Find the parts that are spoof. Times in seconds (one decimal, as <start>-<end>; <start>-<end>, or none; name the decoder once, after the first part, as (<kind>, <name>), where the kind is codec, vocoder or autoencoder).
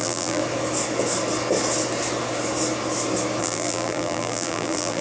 0.0-0.4 (vocoder, BigVGAN v2); 3.4-5.0